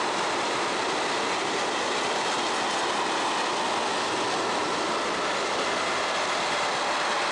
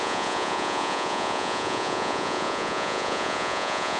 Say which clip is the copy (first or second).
second